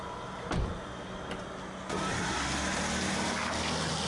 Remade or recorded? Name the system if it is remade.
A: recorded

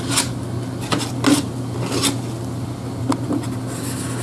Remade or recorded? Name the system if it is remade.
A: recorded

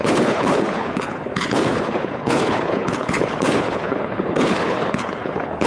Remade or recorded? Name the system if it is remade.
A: remade, codec, HILCodec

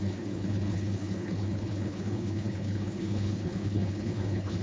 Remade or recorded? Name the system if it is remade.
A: remade, codec, HILCodec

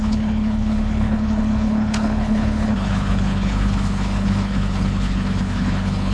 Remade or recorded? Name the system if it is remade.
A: remade, codec, HILCodec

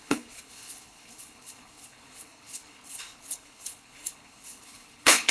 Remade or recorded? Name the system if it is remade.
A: remade, codec, HILCodec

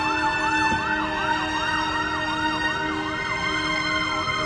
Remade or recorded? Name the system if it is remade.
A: recorded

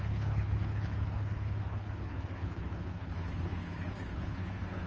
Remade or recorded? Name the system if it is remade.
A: remade, codec, HILCodec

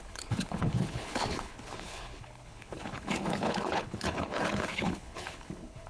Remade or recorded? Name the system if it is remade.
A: remade, codec, HILCodec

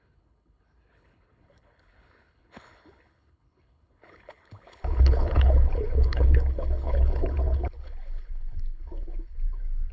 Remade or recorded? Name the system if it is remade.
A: remade, codec, HILCodec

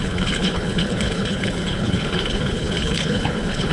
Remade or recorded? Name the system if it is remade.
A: remade, codec, HILCodec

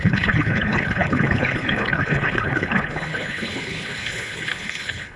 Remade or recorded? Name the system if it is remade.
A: remade, codec, HILCodec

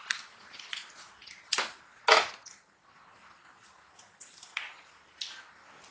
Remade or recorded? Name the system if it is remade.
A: recorded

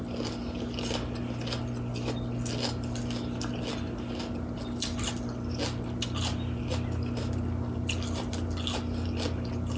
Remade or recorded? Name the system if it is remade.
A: recorded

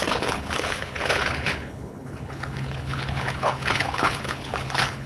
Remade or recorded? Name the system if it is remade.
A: remade, codec, HILCodec